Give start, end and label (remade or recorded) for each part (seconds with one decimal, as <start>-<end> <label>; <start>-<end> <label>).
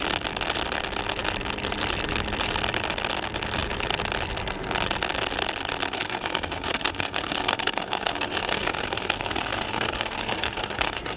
0.0-5.9 recorded; 5.9-11.2 remade